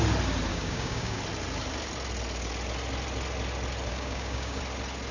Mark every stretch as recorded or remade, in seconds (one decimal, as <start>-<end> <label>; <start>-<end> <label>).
0.0-0.5 recorded; 0.5-1.2 remade; 1.2-3.9 recorded; 3.9-4.6 remade; 4.6-5.1 recorded